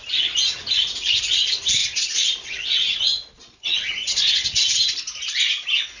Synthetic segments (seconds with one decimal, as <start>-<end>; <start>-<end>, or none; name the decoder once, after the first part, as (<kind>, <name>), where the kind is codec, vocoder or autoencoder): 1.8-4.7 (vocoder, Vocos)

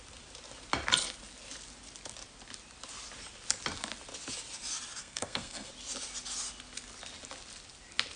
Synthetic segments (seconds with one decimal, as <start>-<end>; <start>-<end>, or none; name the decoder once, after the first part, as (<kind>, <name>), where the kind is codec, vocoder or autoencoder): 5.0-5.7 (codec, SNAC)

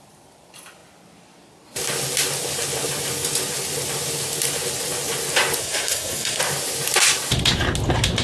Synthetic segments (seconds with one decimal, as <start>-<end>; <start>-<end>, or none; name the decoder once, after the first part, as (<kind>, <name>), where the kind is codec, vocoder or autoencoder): 5.6-6.4 (codec, SNAC)

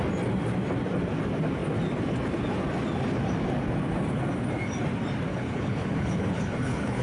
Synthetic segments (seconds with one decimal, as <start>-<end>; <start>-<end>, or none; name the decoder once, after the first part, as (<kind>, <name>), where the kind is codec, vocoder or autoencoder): 5.3-7.0 (codec, HILCodec)